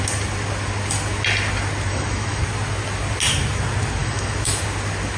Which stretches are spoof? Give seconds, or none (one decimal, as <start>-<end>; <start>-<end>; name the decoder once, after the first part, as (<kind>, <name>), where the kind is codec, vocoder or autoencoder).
1.9-2.4 (autoencoder, DAC-VAE); 4.0-4.6